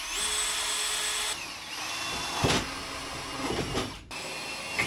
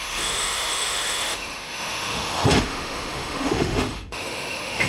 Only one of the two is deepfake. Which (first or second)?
second